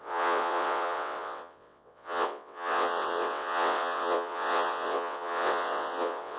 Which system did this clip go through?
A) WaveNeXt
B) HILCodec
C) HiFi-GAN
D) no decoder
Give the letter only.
A